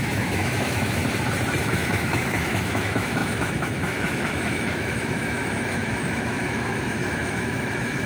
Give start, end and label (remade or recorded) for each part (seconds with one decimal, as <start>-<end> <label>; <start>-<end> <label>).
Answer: 0.0-1.0 remade; 1.0-1.6 recorded; 1.6-8.1 remade